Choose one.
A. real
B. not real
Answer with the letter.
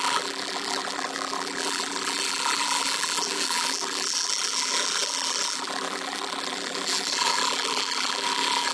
B